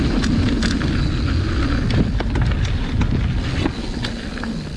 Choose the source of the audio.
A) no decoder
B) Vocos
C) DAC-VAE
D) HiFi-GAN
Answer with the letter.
A